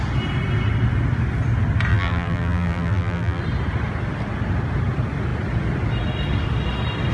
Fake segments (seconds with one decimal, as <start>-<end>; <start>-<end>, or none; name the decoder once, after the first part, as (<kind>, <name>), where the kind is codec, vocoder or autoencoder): 1.9-3.4 (vocoder, BigVGAN v2)